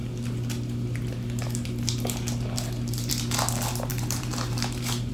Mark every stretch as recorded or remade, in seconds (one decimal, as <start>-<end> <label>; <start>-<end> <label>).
0.0-3.9 recorded; 3.9-5.1 remade